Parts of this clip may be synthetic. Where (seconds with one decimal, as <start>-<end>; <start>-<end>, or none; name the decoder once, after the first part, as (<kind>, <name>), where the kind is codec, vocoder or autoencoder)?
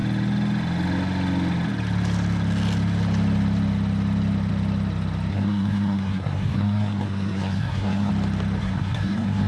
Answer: 5.3-8.1 (codec, SNAC); 8.6-9.5